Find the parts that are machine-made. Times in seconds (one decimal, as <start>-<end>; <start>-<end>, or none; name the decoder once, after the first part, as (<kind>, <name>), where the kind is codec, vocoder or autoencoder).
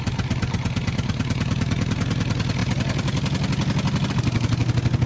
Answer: none